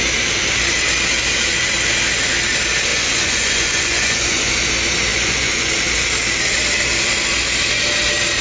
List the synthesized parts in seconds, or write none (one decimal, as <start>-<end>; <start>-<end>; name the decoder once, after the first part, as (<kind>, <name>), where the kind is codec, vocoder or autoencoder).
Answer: 2.9-4.5 (vocoder, Vocos); 5.1-5.7